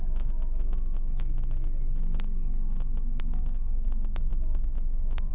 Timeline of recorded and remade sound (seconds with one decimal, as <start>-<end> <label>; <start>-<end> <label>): 0.0-3.2 recorded; 3.2-5.3 remade